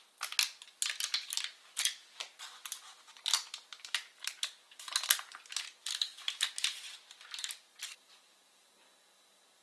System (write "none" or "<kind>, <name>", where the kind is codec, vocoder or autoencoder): none